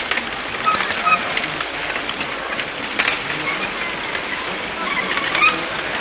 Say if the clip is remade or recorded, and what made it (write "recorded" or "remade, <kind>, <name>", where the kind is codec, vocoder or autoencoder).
recorded